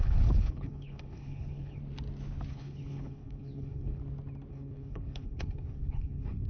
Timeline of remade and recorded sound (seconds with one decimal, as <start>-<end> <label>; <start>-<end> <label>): 0.0-1.8 remade; 1.8-2.5 recorded; 2.5-4.0 remade; 4.0-4.5 recorded; 4.5-6.5 remade